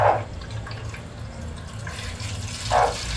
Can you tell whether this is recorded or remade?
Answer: recorded